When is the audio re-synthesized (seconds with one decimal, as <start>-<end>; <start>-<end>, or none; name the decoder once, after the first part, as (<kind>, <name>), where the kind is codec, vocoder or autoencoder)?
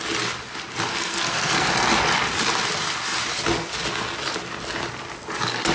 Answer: 0.9-1.7 (codec, SNAC)